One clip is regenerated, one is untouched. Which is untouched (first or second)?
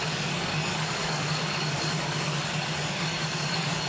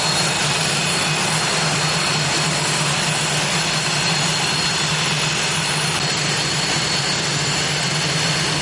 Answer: second